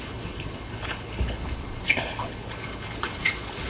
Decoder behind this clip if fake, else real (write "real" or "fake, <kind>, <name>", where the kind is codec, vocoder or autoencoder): fake, codec, HILCodec